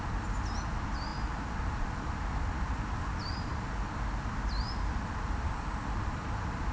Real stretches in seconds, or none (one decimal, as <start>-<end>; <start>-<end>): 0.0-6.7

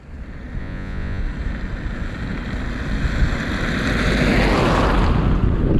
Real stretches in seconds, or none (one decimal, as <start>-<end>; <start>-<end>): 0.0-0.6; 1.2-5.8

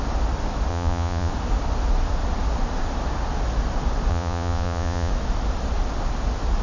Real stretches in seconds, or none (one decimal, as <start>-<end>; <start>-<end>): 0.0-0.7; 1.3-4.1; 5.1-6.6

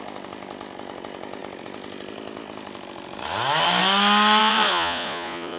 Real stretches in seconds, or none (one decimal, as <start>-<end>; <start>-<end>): 0.0-4.4

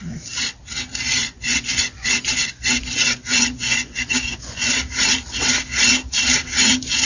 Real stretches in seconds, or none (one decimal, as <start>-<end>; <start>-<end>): 0.0-1.2; 4.8-7.0

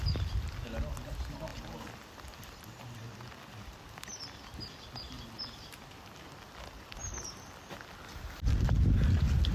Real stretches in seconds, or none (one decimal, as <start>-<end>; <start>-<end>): 0.0-9.5

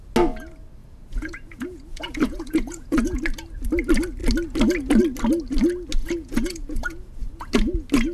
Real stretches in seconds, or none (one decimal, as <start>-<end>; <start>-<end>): 0.0-0.8; 3.2-6.0; 7.5-8.1